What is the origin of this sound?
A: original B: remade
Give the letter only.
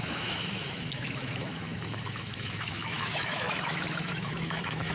B